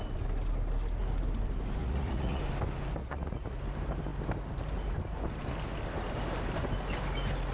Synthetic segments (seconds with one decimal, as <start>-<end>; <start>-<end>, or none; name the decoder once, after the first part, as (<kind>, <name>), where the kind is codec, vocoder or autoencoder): 1.8-2.4 (vocoder, Vocos); 3.0-3.6